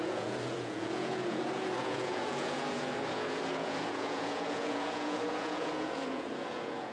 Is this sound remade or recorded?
remade